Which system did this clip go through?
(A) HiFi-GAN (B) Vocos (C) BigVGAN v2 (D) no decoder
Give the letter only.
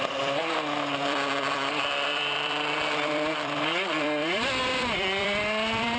C